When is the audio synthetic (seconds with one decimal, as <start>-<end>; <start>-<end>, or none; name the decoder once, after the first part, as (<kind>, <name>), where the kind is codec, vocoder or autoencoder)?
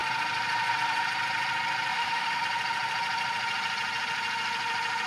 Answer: 1.9-2.4 (autoencoder, DAC-VAE)